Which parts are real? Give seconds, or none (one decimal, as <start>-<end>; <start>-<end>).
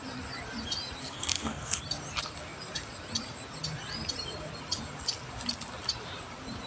0.0-1.0; 1.8-6.7